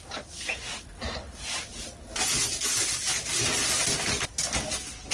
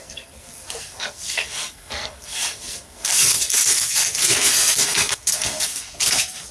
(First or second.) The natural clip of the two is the first